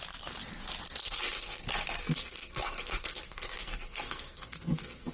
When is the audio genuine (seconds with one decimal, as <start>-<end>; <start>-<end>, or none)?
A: 0.0-1.0; 1.6-2.0